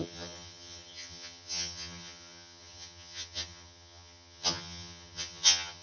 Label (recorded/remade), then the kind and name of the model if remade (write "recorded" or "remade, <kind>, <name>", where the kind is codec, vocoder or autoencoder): remade, vocoder, HiFi-GAN